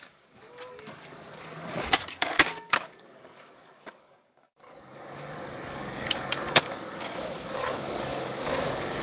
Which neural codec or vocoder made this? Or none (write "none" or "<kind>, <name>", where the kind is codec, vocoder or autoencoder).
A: codec, DAC